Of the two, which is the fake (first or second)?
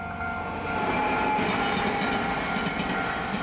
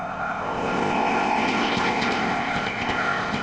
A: second